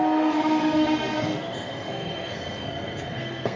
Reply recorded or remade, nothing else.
remade